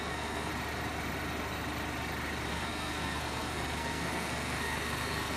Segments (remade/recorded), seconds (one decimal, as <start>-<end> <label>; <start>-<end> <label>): 0.0-0.5 remade; 0.5-2.5 recorded; 2.5-5.4 remade